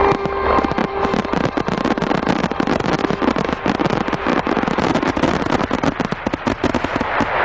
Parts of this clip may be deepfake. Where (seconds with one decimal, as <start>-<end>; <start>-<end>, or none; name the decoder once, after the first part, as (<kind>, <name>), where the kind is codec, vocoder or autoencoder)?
0.8-1.3 (vocoder, BigVGAN v2); 4.3-5.1